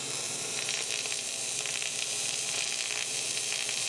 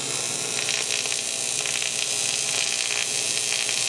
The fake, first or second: first